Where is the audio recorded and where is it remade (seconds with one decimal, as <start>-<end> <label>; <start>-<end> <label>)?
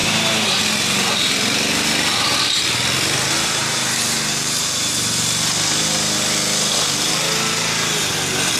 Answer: 0.0-8.6 recorded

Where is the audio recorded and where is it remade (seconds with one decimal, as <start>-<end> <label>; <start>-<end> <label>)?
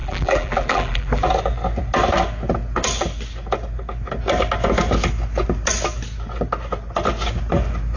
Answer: 0.0-1.3 remade; 1.3-8.0 recorded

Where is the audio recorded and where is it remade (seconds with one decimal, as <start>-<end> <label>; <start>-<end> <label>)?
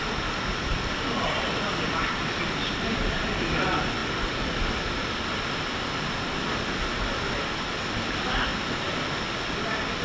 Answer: 0.0-8.5 recorded; 8.5-9.1 remade; 9.1-10.0 recorded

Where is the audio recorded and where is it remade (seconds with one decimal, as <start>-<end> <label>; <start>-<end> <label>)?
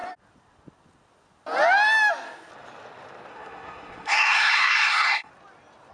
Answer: 0.0-3.3 recorded; 3.3-5.3 remade; 5.3-5.9 recorded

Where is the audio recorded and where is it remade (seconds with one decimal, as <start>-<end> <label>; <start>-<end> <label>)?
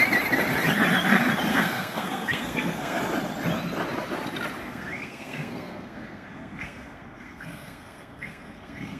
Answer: 0.0-1.5 recorded; 1.5-3.0 remade; 3.0-4.6 recorded; 4.6-9.0 remade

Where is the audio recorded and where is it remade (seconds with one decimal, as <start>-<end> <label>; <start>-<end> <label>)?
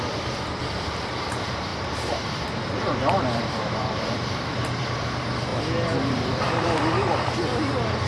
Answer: 0.0-1.7 recorded; 1.7-4.8 remade; 4.8-5.5 recorded; 5.5-8.1 remade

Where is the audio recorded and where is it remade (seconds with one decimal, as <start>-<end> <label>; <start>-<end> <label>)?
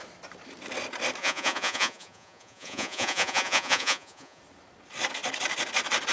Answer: 0.0-1.2 recorded; 1.2-4.4 remade; 4.4-6.1 recorded